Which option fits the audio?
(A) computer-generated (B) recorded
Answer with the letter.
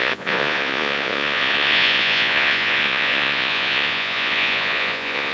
A